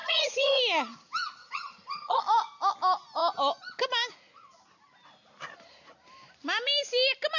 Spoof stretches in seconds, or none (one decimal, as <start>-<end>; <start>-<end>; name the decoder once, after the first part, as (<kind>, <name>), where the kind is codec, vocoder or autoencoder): 0.0-0.6 (vocoder, HiFi-GAN); 1.4-2.2